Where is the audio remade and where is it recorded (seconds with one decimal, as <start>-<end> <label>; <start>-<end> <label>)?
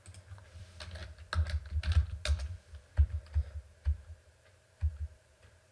0.0-3.0 recorded; 3.0-5.7 remade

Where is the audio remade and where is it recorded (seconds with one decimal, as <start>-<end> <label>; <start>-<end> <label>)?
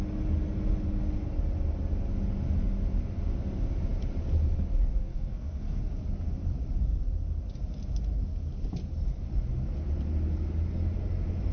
0.0-5.1 recorded; 5.1-5.8 remade; 5.8-11.5 recorded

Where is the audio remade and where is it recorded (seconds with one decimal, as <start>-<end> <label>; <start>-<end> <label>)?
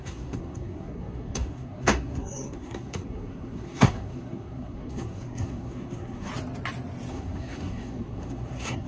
0.0-6.3 remade; 6.3-7.1 recorded; 7.1-8.9 remade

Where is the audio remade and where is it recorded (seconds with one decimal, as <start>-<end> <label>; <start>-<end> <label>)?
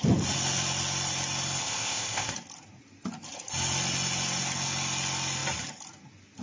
0.0-1.6 recorded; 1.6-2.3 remade; 2.3-6.4 recorded